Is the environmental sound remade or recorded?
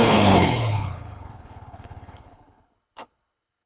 remade